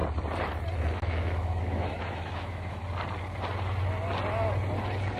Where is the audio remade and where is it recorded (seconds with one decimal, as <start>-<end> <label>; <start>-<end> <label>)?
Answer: 0.0-0.9 recorded; 0.9-2.8 remade; 2.8-5.2 recorded

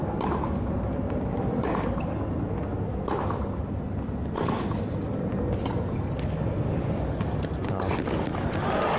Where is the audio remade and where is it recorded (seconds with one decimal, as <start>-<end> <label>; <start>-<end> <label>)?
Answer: 0.0-9.0 recorded

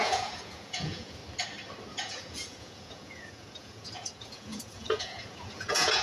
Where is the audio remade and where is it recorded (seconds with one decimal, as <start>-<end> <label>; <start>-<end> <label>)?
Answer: 0.0-1.2 remade; 1.2-1.9 recorded; 1.9-6.0 remade

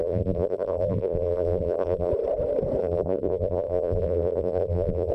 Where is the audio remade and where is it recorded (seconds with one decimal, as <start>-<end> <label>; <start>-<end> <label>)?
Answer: 0.0-2.1 remade; 2.1-2.8 recorded; 2.8-5.1 remade